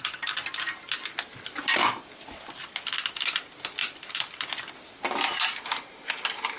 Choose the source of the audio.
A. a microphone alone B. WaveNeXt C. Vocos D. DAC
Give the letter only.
A